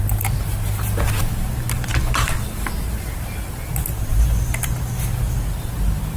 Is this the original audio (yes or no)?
no